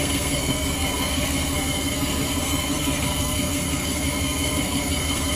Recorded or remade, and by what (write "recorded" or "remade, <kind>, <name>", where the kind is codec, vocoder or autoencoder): remade, codec, SNAC